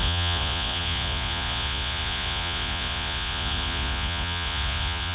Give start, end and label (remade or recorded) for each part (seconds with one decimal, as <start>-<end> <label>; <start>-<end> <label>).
0.0-5.1 remade